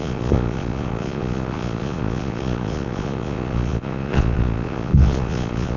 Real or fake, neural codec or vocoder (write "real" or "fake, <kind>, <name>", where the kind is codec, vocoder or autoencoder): fake, vocoder, Vocos